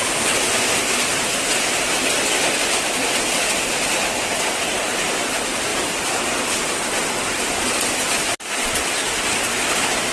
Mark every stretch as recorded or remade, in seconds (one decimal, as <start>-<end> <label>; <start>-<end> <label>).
0.0-10.1 recorded